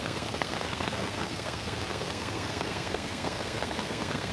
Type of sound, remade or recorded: remade